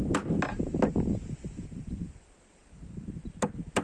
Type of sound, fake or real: real